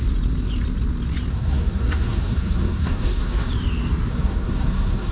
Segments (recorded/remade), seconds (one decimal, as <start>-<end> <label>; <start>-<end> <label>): 0.0-1.3 recorded; 1.3-3.5 remade; 3.5-4.1 recorded; 4.1-5.1 remade